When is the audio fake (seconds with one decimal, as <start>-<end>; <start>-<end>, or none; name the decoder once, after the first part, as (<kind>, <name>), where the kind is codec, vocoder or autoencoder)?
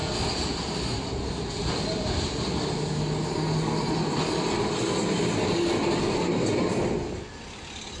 none